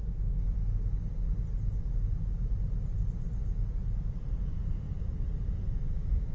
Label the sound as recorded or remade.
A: recorded